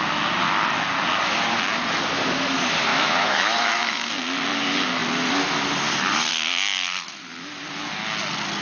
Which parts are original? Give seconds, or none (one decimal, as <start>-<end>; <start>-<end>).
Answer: 0.0-2.9; 4.1-8.6

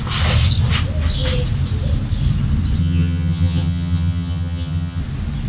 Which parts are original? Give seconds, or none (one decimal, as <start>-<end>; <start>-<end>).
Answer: 0.0-2.8; 5.0-5.5

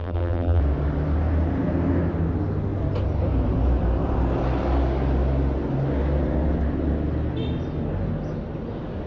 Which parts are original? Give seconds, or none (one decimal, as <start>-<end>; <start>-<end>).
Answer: 0.6-9.1